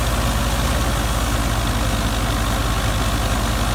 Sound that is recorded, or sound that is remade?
recorded